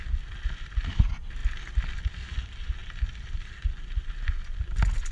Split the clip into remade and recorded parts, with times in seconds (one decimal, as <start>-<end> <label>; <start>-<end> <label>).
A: 0.0-5.1 recorded